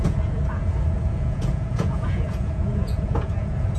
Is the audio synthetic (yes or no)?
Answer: yes